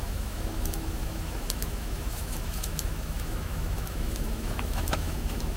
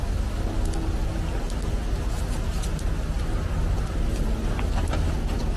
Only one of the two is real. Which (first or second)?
second